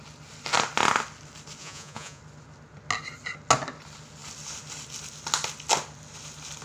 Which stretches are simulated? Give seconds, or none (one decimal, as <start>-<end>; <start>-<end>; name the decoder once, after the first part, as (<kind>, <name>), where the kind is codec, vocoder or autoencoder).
1.6-2.2 (vocoder, Vocos)

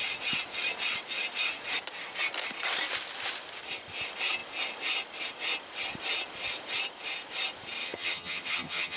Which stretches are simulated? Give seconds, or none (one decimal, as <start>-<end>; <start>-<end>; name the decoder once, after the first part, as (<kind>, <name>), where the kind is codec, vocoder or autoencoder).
7.8-9.0 (vocoder, HiFi-GAN)

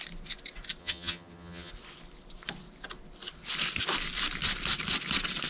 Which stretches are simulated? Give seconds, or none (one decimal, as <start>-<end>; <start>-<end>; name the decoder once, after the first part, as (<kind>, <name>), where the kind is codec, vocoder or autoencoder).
0.8-1.7 (vocoder, HiFi-GAN)

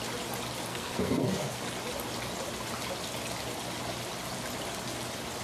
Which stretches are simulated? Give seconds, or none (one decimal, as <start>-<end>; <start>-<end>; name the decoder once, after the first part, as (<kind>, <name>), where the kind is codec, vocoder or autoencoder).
0.7-1.6 (codec, SNAC)